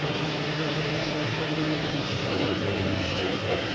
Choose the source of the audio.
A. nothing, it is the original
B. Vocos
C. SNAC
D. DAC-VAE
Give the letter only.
C